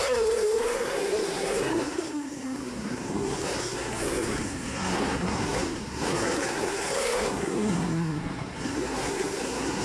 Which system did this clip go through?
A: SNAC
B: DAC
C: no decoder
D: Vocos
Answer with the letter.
A